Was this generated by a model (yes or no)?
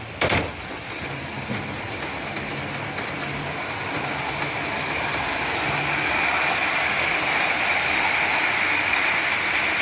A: no